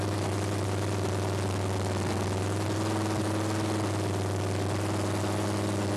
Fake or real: real